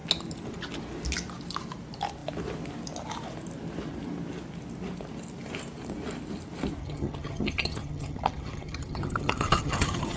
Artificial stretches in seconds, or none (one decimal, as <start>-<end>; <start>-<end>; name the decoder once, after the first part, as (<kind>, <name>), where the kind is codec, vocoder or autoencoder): 6.8-10.2 (vocoder, HiFi-GAN)